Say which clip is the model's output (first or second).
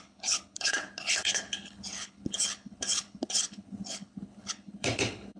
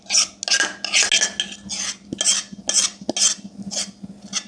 first